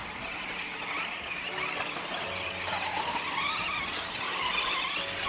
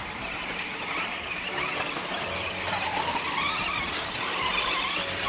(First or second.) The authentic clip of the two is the first